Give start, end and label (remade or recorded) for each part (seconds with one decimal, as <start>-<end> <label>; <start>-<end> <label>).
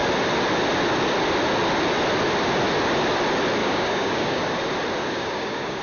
0.0-3.6 recorded; 3.6-4.4 remade; 4.4-5.0 recorded; 5.0-5.8 remade